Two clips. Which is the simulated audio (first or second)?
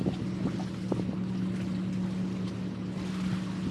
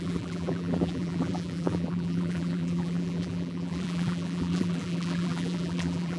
second